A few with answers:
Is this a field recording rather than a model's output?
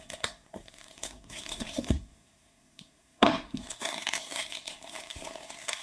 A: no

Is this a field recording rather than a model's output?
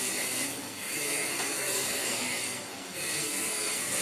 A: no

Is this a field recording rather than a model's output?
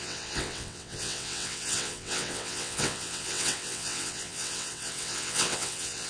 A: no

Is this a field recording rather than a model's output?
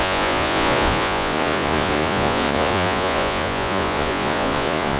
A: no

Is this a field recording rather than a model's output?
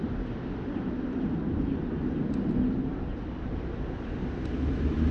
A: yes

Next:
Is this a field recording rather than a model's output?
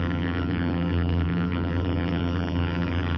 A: no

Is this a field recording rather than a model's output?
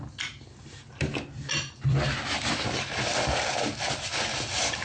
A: yes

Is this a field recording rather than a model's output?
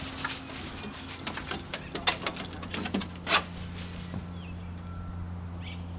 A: yes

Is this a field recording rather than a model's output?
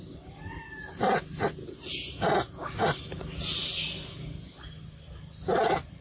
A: yes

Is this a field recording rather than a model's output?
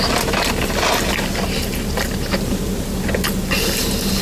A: yes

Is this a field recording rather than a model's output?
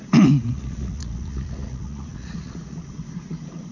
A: no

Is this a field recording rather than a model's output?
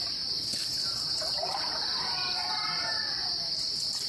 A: no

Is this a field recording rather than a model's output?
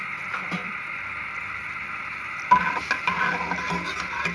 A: yes